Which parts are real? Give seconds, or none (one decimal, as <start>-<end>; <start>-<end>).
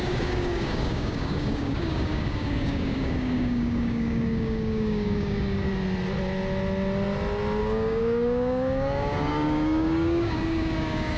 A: 5.7-7.6